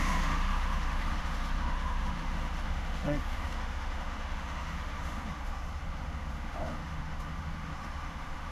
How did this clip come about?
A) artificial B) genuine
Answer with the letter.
A